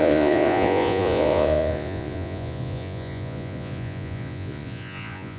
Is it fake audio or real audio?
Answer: fake